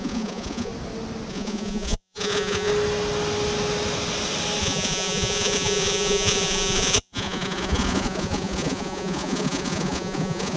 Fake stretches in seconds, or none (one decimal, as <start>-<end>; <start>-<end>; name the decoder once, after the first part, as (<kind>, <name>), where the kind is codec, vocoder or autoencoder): 0.0-0.7 (vocoder, Vocos); 1.3-2.7; 4.6-10.6